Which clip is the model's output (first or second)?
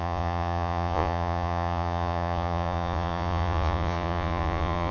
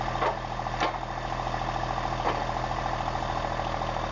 first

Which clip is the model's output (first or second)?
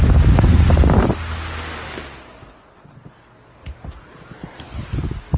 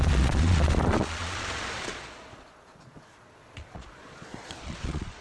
second